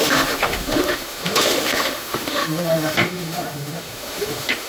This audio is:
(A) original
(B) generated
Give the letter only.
B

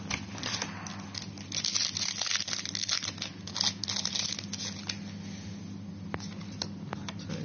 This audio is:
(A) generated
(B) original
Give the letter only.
B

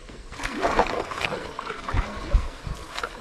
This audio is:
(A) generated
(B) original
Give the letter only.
A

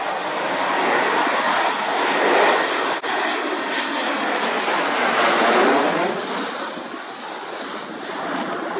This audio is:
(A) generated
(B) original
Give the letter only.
B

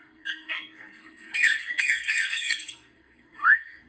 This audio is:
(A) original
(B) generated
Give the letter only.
B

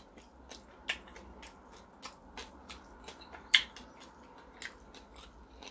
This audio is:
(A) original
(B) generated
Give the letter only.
A